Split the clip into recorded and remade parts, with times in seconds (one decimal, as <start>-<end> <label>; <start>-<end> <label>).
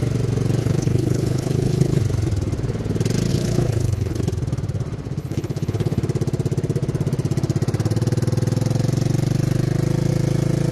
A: 0.0-0.6 recorded; 0.6-2.0 remade; 2.0-3.3 recorded; 3.3-4.2 remade; 4.2-5.2 recorded; 5.2-6.0 remade; 6.0-10.7 recorded